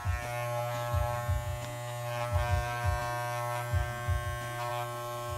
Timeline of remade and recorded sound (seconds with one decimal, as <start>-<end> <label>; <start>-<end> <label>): 0.0-5.4 recorded